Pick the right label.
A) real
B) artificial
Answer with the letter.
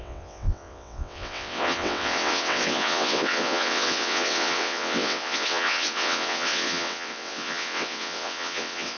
B